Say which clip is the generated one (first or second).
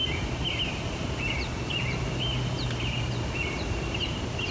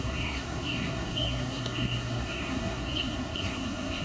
second